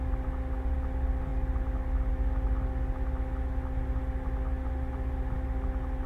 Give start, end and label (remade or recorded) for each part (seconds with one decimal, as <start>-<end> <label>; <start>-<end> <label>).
0.0-6.1 recorded

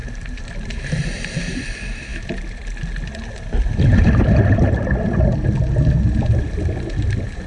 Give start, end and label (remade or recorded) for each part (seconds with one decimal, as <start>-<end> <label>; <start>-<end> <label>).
0.0-2.1 remade; 2.1-5.8 recorded; 5.8-7.5 remade

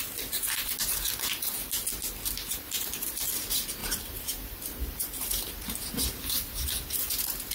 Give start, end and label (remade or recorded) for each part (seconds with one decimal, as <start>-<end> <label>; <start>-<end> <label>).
0.0-3.8 recorded; 3.8-5.5 remade; 5.5-7.5 recorded

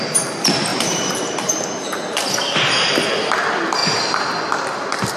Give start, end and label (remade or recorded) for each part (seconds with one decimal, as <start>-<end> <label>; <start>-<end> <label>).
0.0-0.7 recorded; 0.7-2.5 remade; 2.5-5.2 recorded

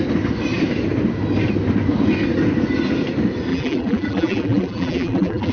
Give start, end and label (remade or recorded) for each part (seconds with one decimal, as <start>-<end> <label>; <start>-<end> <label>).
0.0-3.5 recorded; 3.5-5.5 remade

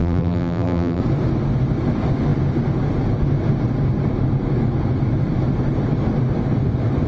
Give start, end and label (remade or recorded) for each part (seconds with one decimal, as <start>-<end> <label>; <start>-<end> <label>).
0.0-1.0 remade; 1.0-7.1 recorded

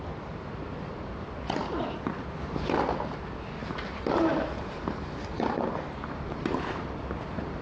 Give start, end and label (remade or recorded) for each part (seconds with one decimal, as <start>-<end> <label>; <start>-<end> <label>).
0.0-3.6 recorded; 3.6-6.6 remade; 6.6-7.6 recorded